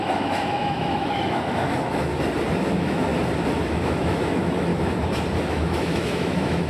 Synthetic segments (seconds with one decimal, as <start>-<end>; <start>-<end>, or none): 0.0-2.1; 2.7-3.1; 3.6-4.7; 5.5-6.7